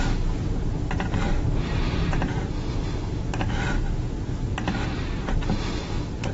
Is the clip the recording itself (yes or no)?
yes